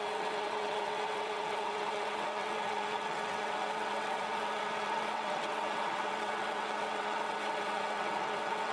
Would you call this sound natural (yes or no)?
no